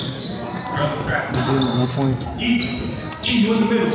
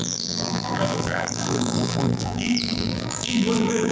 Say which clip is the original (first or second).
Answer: first